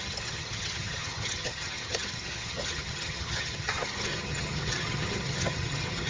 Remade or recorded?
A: remade